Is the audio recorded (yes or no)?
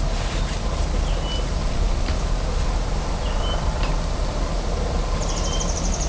yes